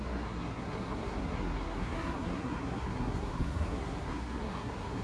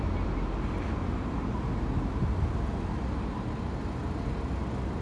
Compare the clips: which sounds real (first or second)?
second